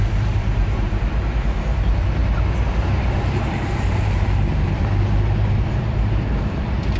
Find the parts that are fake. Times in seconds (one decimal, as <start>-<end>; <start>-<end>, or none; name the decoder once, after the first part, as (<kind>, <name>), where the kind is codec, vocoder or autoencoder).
0.0-2.2 (vocoder, BigVGAN v2); 2.7-7.0